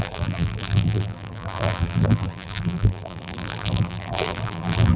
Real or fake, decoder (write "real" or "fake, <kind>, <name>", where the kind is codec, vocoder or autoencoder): fake, vocoder, BigVGAN v2